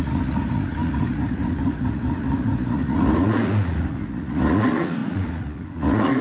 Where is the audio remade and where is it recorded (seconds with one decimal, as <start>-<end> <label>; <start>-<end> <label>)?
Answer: 0.0-6.2 remade